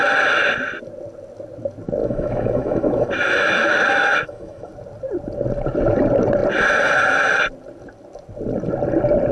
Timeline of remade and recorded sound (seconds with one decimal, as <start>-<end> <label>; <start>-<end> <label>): 0.0-2.0 recorded; 2.0-4.7 remade; 4.7-9.3 recorded